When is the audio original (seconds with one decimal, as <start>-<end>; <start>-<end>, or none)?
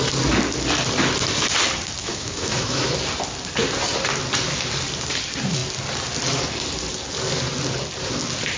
0.0-2.0; 2.9-8.6